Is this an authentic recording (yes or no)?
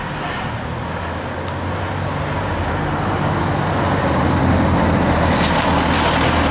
yes